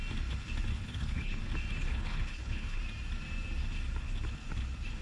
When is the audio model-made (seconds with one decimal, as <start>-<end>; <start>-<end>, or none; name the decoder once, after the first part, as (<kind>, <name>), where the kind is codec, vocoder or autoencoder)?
0.7-1.4 (codec, HILCodec); 1.8-2.8